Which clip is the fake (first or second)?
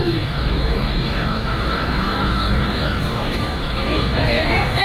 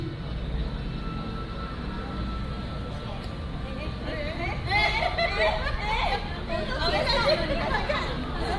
first